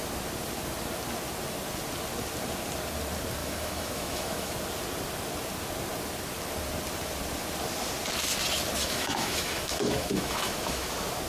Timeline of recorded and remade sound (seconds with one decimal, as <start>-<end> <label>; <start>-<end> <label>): 0.0-3.4 recorded; 3.4-4.5 remade; 4.5-8.8 recorded; 8.8-10.9 remade; 10.9-11.3 recorded

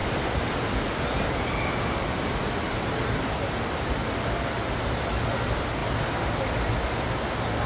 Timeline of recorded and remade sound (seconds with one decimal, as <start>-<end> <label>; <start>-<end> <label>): 0.0-7.7 recorded

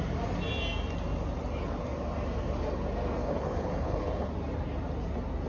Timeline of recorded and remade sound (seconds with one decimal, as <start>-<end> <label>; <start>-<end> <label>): 0.0-3.2 recorded; 3.2-4.3 remade; 4.3-5.5 recorded